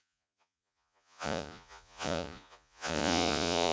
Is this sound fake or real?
fake